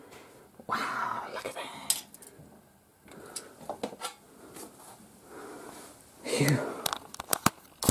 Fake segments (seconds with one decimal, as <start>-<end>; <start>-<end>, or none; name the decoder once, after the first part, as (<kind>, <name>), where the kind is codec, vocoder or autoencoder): 2.9-7.9 (vocoder, BigVGAN v2)